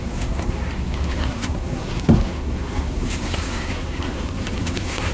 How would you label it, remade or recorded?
remade